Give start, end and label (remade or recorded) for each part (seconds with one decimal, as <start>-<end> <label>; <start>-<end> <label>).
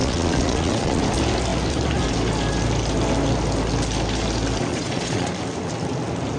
0.0-1.0 remade; 1.0-4.7 recorded; 4.7-5.3 remade; 5.3-6.4 recorded